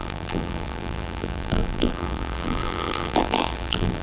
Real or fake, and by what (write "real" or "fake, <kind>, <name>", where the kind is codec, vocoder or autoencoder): fake, vocoder, BigVGAN v2